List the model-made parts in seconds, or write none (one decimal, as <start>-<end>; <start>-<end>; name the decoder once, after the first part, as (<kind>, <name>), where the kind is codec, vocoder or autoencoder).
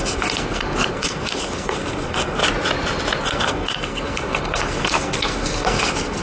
0.0-2.4 (codec, SNAC); 3.2-6.2